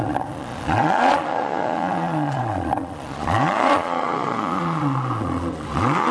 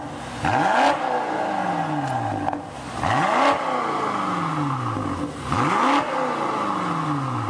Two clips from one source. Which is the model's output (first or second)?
first